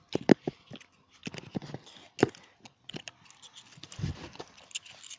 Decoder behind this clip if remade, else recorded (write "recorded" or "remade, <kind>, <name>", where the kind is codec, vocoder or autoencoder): recorded